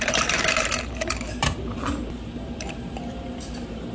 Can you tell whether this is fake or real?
fake